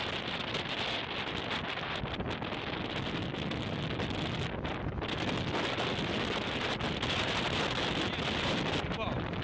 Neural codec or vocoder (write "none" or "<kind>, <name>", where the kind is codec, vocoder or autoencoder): none